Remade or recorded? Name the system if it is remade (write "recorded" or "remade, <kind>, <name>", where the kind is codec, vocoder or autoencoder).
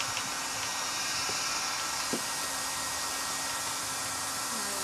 recorded